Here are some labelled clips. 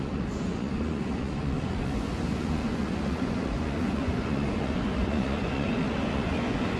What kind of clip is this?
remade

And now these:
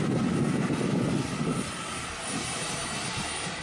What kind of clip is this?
recorded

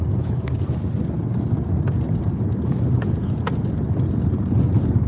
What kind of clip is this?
recorded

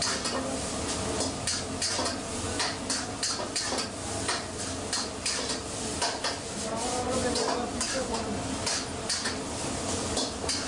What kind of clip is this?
recorded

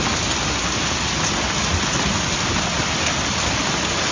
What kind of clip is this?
recorded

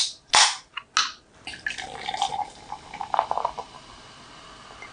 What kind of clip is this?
recorded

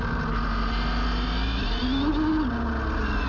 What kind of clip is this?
recorded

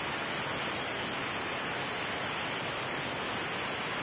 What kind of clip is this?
recorded